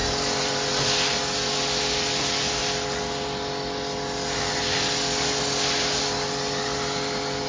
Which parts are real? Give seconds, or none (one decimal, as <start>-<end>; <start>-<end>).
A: 0.0-7.5